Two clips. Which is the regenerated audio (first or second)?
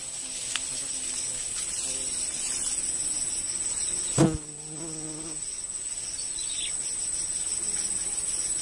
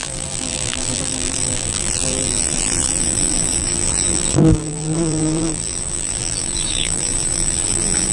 second